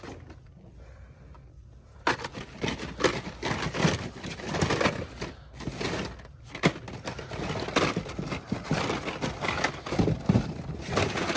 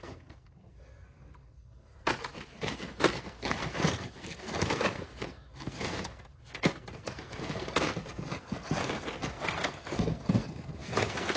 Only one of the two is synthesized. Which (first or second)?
second